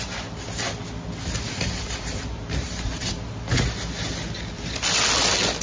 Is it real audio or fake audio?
real